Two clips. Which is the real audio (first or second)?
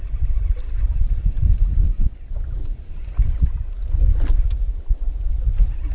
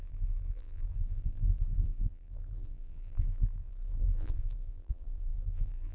first